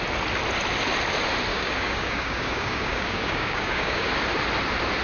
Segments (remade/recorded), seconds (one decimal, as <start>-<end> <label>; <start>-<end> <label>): 0.0-1.5 recorded; 1.5-4.1 remade; 4.1-5.0 recorded